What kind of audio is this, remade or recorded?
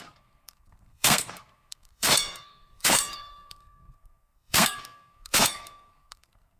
remade